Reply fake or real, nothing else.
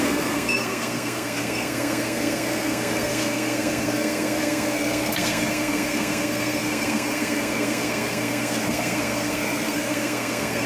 fake